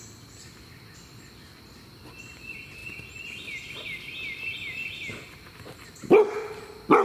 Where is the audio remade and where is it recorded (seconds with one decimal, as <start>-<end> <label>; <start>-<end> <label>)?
0.0-7.0 recorded